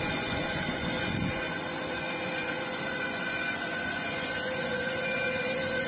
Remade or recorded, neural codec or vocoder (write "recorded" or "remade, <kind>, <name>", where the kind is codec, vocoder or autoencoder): remade, vocoder, Vocos